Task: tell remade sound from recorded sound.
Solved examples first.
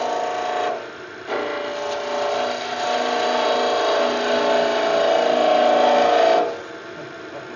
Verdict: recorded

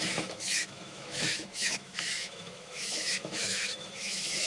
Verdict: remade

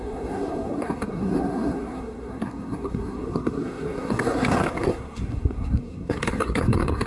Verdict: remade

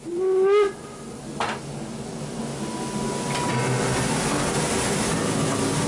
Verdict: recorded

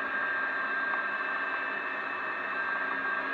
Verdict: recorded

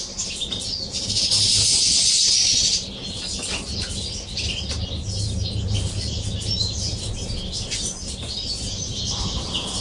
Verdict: recorded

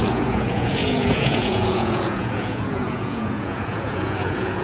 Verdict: remade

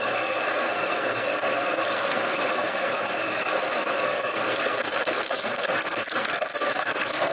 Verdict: remade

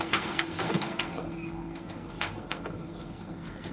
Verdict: remade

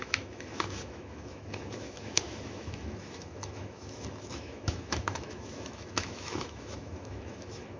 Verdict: remade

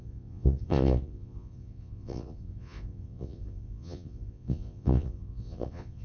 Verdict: remade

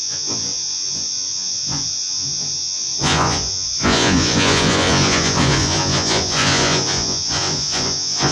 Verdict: remade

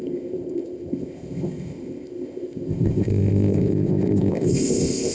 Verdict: remade